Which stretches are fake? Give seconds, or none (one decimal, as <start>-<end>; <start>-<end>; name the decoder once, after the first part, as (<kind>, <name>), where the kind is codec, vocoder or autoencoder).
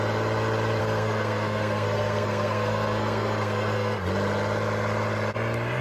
0.8-4.0 (codec, SNAC)